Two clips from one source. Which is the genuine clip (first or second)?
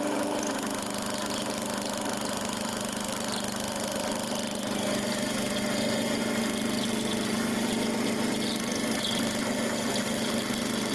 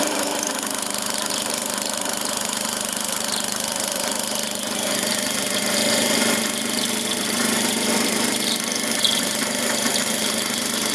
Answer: first